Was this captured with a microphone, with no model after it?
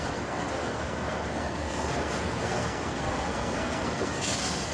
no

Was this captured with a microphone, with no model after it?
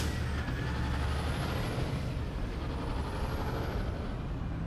yes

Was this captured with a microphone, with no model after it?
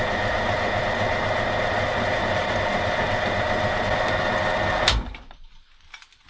yes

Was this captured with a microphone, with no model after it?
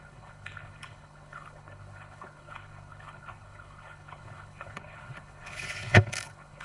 no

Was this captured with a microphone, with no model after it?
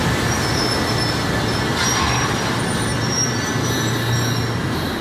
yes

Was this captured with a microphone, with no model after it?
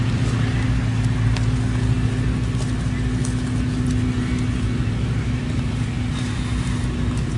yes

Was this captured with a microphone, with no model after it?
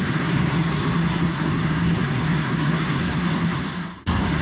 no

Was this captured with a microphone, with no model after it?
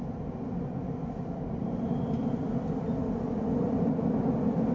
yes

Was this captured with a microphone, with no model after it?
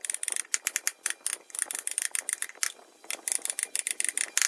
yes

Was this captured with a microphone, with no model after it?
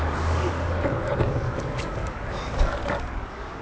no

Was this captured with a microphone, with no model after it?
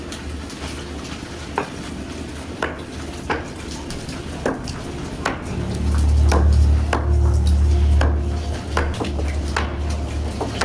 yes